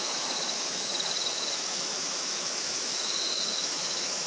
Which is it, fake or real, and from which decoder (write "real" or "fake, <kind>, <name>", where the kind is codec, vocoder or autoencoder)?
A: fake, autoencoder, DAC-VAE